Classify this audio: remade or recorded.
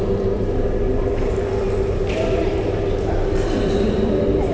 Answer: recorded